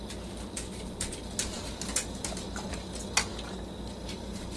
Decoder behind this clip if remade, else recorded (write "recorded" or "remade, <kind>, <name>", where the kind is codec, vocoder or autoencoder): recorded